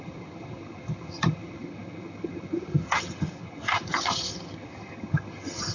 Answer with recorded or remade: remade